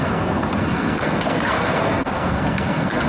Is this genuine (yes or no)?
no